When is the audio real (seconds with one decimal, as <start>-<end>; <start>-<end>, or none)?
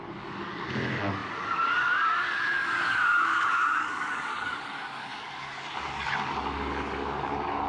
none